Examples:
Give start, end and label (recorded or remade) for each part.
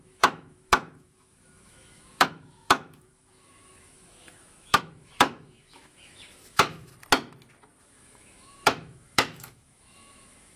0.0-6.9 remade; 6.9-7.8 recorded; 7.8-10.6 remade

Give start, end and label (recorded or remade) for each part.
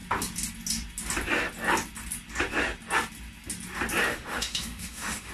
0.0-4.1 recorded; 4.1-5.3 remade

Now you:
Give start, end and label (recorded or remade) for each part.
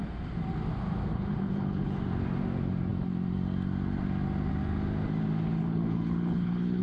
0.0-1.1 recorded; 1.1-2.0 remade; 2.0-5.6 recorded; 5.6-6.8 remade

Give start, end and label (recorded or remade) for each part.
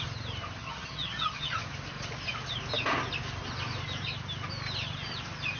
0.0-0.6 recorded; 0.6-1.5 remade; 1.5-5.6 recorded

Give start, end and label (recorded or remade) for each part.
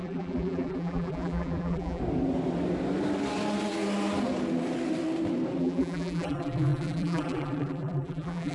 0.0-2.0 remade; 2.0-5.6 recorded; 5.6-8.5 remade